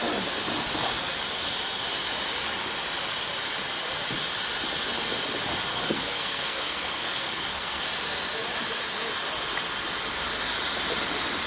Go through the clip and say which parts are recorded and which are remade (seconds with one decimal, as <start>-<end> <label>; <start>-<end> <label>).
0.0-5.7 recorded; 5.7-7.8 remade; 7.8-11.5 recorded